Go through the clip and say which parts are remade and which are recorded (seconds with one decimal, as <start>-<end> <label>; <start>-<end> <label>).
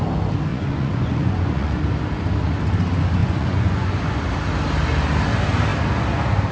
0.0-0.5 recorded; 0.5-1.8 remade; 1.8-3.2 recorded; 3.2-4.2 remade; 4.2-6.5 recorded